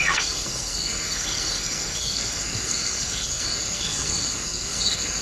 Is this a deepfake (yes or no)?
yes